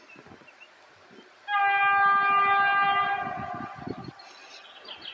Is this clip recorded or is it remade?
recorded